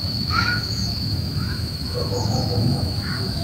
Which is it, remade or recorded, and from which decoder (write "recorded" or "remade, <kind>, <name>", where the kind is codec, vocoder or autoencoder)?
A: remade, autoencoder, DAC-VAE